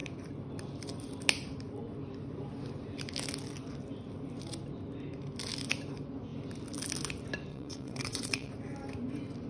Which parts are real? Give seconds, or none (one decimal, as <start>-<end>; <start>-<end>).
0.0-7.5; 8.5-9.5